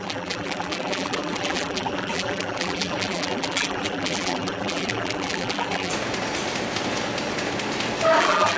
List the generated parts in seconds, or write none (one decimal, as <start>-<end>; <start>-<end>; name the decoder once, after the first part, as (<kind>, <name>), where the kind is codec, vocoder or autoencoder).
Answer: 0.0-5.9 (vocoder, BigVGAN v2); 8.2-8.6